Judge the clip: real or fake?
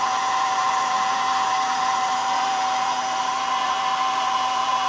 fake